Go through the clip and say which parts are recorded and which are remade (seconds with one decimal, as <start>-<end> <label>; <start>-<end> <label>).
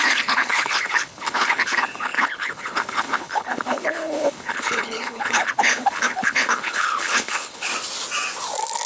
0.0-7.7 remade; 7.7-8.9 recorded